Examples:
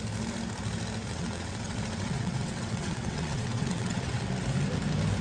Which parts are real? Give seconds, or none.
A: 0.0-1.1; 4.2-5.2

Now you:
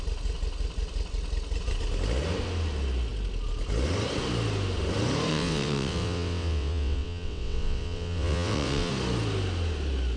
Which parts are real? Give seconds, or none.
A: 0.0-5.3; 8.9-10.2

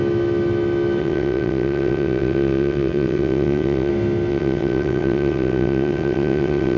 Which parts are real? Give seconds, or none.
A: 0.0-1.0; 3.9-4.3

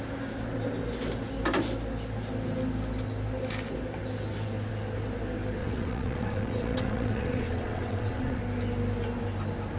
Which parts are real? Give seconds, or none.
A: 0.0-5.6; 8.4-9.8